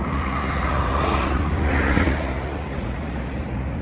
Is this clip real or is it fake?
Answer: fake